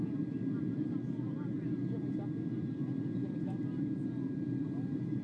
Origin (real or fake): real